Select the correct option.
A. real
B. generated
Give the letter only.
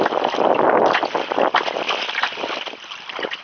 A